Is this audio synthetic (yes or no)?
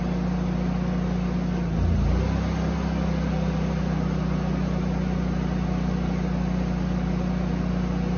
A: no